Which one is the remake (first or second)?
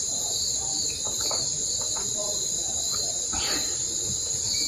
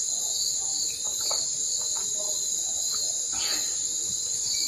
first